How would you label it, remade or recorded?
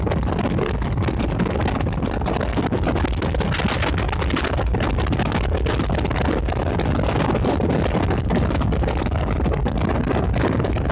recorded